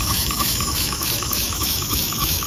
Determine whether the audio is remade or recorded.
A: remade